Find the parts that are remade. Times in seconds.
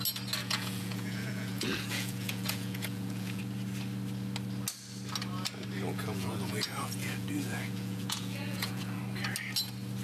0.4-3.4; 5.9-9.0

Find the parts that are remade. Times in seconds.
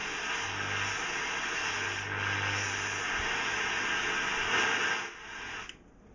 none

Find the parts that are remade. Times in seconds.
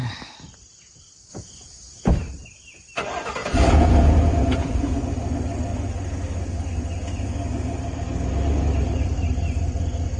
1.3-2.1; 3.4-5.0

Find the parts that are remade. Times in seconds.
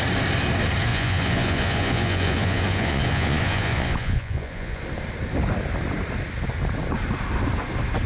0.9-4.8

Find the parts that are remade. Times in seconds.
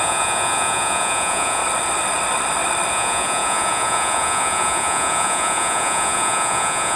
0.0-1.6; 2.9-7.0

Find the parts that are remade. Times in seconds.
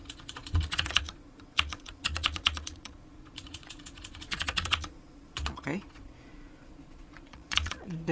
0.0-8.1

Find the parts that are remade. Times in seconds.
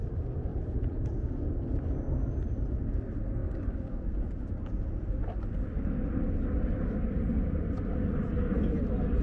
0.5-1.5